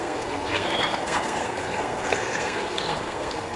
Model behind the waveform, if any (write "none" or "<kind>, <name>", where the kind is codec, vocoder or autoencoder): codec, SNAC